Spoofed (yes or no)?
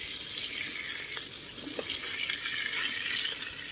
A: no